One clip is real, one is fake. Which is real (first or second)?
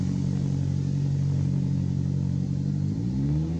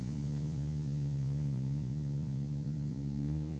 first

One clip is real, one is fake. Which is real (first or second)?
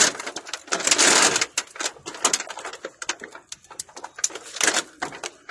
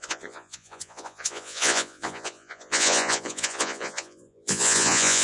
first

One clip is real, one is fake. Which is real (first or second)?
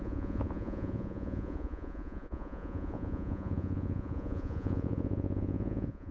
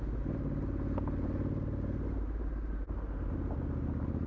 second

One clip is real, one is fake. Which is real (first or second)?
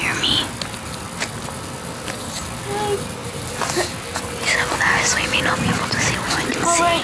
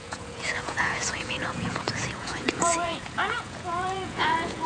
first